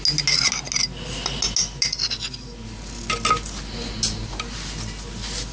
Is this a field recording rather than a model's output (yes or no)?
yes